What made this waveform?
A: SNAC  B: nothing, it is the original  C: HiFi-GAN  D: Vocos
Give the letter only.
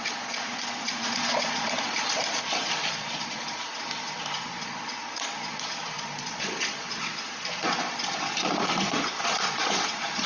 D